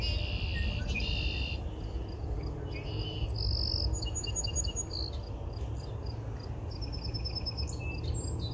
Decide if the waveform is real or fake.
real